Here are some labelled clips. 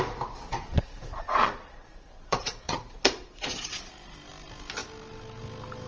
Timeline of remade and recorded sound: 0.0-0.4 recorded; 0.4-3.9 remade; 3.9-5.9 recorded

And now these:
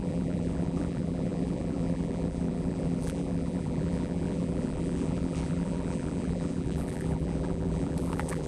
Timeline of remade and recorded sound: 0.0-8.5 remade